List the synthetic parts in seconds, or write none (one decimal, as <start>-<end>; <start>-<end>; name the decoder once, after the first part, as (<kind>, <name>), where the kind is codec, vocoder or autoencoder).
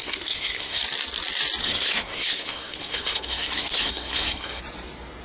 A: 0.0-0.8 (codec, SNAC); 1.6-4.6